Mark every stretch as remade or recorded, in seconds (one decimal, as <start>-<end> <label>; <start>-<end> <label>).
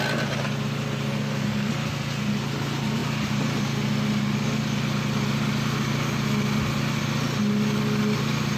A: 0.0-1.1 recorded; 1.1-1.7 remade; 1.7-8.6 recorded